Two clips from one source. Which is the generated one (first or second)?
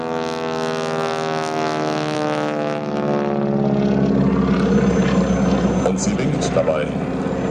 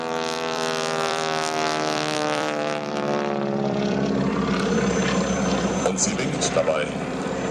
second